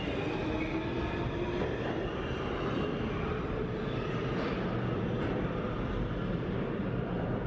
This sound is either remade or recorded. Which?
recorded